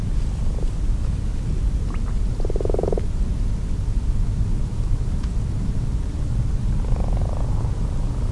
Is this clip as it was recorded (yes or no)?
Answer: yes